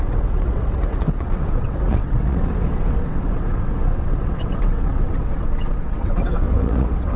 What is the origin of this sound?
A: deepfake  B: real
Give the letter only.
A